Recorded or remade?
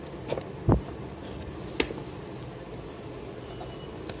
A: recorded